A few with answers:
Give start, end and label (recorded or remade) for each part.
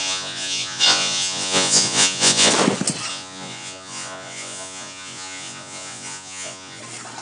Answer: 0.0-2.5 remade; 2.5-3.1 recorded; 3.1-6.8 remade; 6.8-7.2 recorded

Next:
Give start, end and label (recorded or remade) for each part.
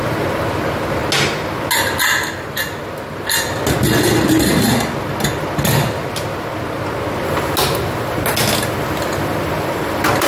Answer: 0.0-10.3 recorded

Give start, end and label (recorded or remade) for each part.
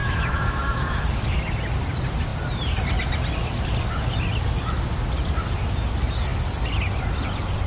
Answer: 0.0-1.0 remade; 1.0-7.7 recorded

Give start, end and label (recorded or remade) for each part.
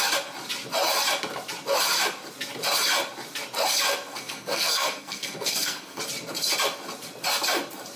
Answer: 0.0-4.1 recorded; 4.1-6.0 remade; 6.0-8.0 recorded